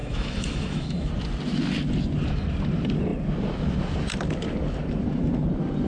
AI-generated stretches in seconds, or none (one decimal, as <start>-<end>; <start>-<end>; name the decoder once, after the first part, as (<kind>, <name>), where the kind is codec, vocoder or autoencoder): 0.0-1.1 (autoencoder, DAC-VAE)

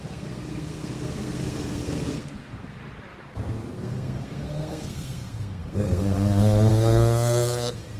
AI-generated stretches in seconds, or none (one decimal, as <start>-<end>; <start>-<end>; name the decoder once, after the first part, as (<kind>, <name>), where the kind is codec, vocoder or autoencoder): 0.0-2.8 (codec, SNAC); 3.7-8.0

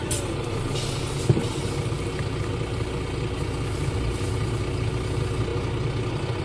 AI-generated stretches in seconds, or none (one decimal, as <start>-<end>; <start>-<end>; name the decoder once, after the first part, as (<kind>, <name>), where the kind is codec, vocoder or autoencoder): none